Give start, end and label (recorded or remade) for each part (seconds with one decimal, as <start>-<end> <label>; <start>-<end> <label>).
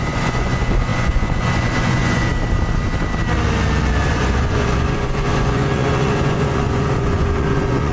0.0-2.3 remade; 2.3-4.1 recorded; 4.1-7.9 remade